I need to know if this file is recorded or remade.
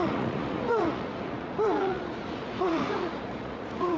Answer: remade